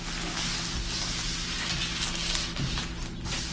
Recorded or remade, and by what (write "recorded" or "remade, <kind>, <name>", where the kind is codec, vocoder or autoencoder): recorded